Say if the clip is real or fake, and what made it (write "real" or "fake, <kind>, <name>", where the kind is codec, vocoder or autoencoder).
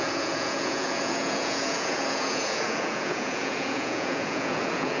fake, vocoder, Vocos